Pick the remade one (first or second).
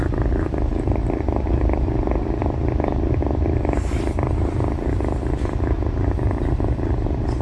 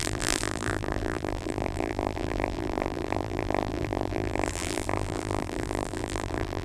second